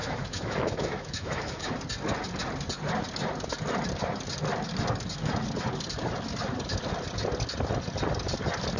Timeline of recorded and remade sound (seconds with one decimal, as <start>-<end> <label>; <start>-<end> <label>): 0.0-1.7 remade; 1.7-8.8 recorded